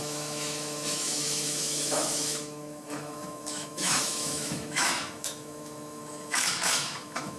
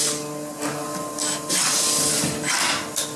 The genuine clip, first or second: second